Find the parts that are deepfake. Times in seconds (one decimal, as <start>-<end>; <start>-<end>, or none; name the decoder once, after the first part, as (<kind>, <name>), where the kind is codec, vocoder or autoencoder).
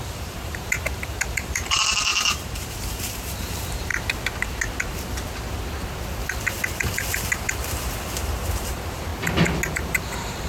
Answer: 0.0-3.9 (vocoder, BigVGAN v2); 8.6-9.1; 9.7-10.5